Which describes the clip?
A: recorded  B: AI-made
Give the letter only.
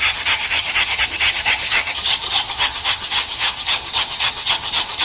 B